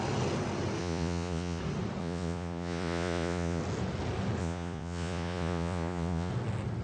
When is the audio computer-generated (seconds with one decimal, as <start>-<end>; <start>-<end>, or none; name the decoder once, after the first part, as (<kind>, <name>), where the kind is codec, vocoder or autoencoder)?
0.8-1.6 (vocoder, Vocos); 2.0-3.6; 4.4-6.3